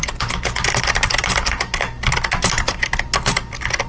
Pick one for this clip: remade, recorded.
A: recorded